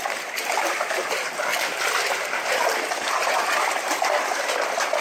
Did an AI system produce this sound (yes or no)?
no